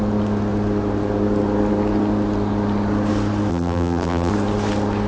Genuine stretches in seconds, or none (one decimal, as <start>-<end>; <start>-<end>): 0.0-3.5; 4.3-5.1